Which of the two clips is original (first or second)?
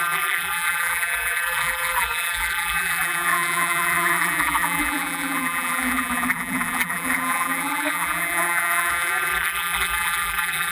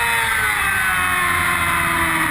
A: second